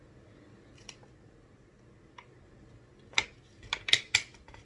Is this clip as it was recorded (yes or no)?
yes